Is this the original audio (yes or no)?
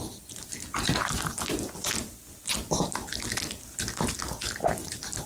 yes